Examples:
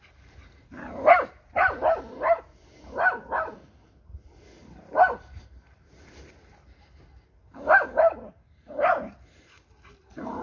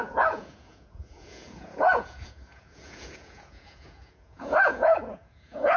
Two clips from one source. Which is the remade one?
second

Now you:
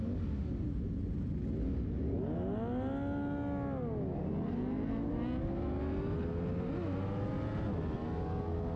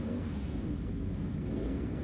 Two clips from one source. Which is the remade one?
second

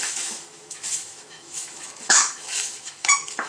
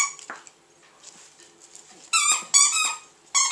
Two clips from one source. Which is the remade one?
first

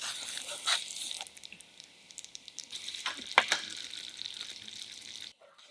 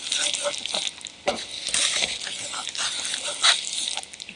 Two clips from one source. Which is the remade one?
first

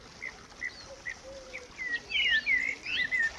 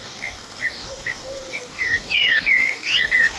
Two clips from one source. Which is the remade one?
second